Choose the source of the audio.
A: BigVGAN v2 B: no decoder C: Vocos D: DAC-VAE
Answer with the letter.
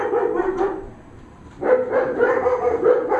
A